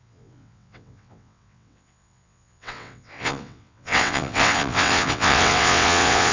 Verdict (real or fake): fake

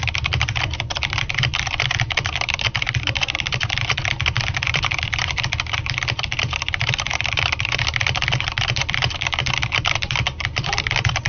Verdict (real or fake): fake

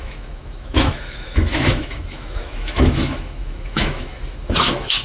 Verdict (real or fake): fake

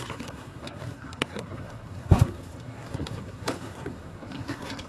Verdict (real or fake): fake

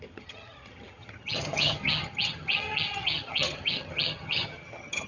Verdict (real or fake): fake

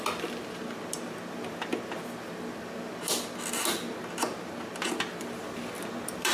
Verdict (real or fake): real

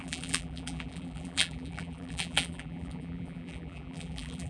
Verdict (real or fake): fake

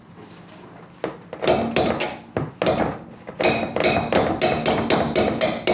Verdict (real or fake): real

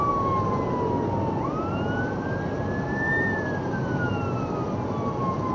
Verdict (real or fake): real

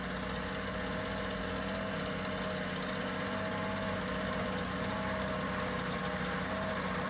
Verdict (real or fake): real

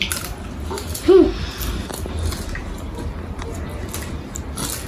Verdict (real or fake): real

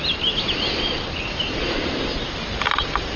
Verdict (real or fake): real